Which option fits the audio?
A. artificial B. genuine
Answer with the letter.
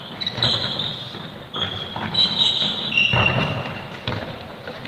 B